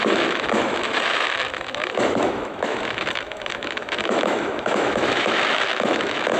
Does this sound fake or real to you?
fake